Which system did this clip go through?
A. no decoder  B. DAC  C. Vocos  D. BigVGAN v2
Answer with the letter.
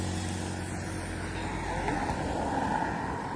A